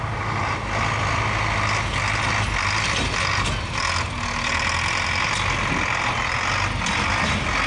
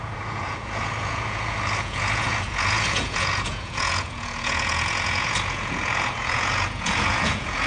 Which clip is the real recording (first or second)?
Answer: first